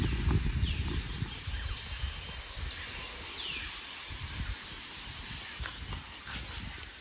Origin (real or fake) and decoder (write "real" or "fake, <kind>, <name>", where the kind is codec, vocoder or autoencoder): real